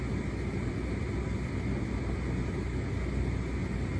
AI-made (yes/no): no